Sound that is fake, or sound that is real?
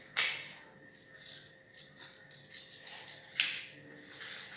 real